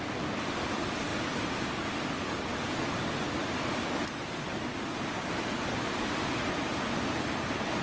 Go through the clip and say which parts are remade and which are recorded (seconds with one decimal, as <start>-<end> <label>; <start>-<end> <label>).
0.0-7.8 recorded